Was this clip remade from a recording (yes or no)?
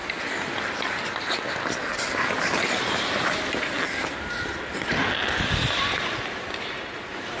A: no